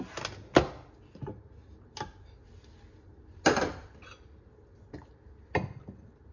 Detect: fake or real real